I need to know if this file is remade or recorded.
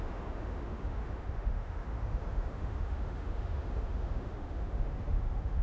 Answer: remade